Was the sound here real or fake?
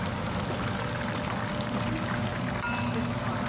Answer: real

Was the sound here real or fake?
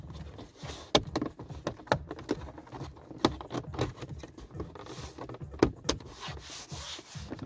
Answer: real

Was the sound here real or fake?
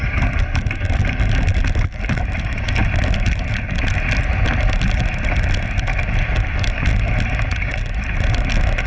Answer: real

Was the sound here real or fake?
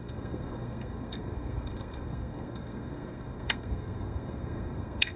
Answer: fake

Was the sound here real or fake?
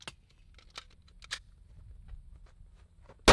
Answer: real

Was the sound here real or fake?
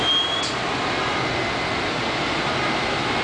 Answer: real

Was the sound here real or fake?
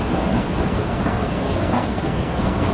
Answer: fake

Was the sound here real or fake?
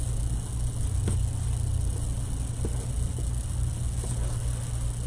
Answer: real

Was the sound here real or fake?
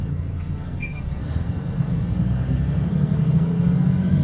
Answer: fake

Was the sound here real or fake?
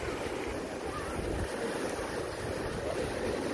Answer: real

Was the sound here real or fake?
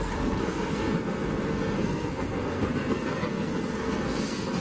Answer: fake